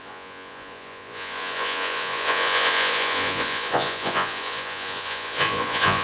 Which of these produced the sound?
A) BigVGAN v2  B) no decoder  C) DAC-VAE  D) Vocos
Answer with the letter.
D